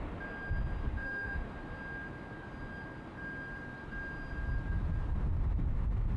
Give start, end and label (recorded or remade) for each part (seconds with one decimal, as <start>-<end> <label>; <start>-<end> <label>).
0.0-0.8 recorded; 0.8-1.5 remade; 1.5-6.2 recorded

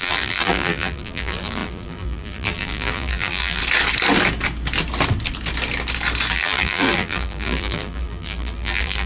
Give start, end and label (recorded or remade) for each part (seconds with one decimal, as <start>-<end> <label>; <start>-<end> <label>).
0.0-3.6 remade; 3.6-6.3 recorded; 6.3-9.1 remade

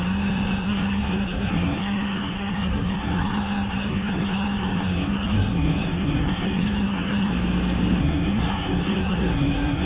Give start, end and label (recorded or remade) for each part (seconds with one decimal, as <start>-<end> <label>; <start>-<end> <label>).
0.0-7.3 remade; 7.3-8.0 recorded; 8.0-9.9 remade

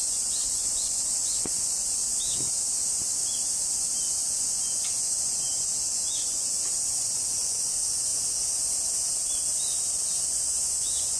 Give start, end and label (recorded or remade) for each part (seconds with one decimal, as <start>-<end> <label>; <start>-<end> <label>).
0.0-2.0 remade; 2.0-3.8 recorded; 3.8-8.1 remade; 8.1-10.2 recorded; 10.2-11.2 remade

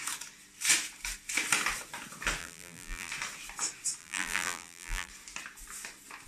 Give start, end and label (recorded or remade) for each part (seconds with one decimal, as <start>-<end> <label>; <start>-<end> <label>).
0.0-2.4 recorded; 2.4-3.1 remade; 3.1-4.0 recorded; 4.0-5.1 remade; 5.1-6.3 recorded

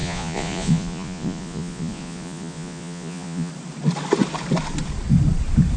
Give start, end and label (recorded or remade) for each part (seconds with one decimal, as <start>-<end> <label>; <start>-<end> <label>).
0.0-3.5 remade; 3.5-5.8 recorded

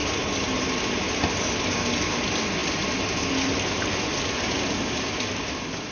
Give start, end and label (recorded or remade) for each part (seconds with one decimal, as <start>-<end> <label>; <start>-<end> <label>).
0.0-5.9 recorded

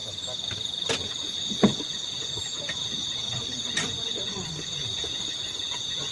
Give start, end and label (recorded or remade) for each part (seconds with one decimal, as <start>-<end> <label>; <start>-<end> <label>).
0.0-1.6 recorded; 1.6-2.5 remade; 2.5-3.7 recorded; 3.7-4.9 remade; 4.9-5.6 recorded; 5.6-6.1 remade